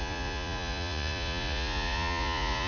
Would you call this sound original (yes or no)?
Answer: no